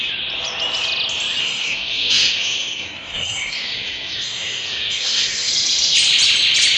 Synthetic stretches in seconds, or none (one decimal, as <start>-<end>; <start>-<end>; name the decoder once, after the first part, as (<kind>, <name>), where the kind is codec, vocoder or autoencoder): 1.4-5.5 (codec, SNAC)